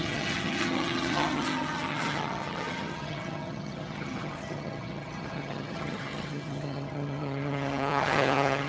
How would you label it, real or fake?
fake